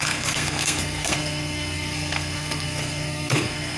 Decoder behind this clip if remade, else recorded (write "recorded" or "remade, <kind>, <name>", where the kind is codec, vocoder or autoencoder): remade, codec, SNAC